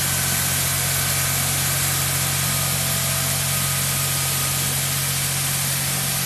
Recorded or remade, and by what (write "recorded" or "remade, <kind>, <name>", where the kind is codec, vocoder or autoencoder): recorded